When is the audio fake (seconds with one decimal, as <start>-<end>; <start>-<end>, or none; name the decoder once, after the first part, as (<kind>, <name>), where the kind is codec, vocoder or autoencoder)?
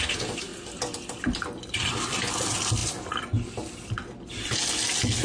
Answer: 0.5-1.2 (vocoder, BigVGAN v2)